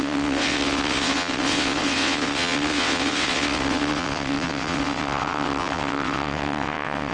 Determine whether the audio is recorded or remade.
remade